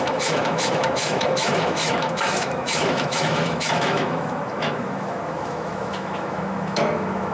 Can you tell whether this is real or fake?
fake